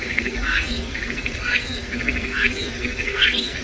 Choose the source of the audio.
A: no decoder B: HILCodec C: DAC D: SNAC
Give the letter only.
D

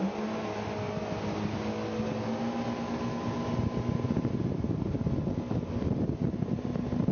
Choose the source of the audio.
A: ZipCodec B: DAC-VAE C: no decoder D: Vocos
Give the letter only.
C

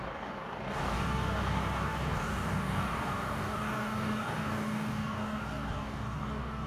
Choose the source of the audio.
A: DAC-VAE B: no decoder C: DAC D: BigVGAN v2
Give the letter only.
C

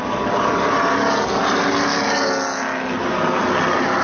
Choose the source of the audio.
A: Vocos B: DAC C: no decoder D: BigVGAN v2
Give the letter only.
C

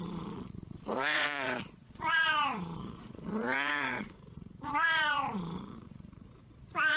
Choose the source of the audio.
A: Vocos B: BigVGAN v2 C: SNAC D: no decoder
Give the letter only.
A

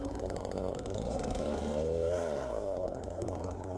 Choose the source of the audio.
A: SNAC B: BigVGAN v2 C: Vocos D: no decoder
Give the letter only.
A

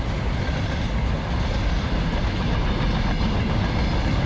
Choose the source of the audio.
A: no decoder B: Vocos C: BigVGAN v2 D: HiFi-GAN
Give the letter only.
A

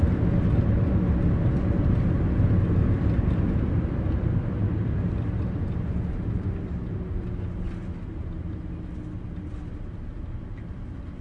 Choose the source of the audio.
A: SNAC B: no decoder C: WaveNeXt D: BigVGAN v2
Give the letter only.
B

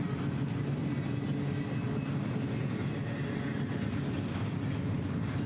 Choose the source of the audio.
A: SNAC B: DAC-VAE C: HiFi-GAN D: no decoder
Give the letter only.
D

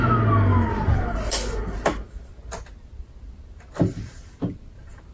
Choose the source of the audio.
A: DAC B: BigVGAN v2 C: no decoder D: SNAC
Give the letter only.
C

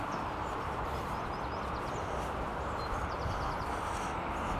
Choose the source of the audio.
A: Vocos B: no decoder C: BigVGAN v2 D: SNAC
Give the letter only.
B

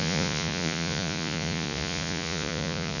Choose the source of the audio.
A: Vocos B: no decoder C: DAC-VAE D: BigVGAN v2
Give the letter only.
A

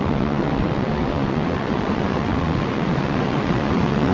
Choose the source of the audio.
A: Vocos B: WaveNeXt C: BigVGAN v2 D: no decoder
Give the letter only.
B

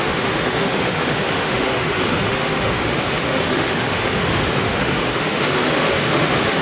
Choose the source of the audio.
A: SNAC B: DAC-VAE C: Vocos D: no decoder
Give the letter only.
B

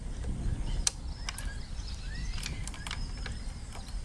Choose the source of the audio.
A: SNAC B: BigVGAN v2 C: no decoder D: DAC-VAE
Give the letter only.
C